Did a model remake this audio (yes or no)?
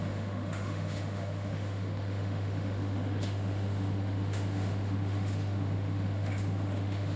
yes